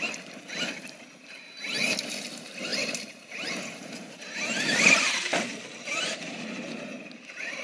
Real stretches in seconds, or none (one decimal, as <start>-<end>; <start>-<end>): 0.0-2.7